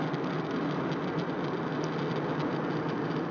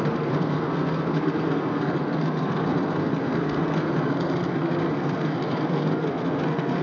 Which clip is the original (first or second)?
first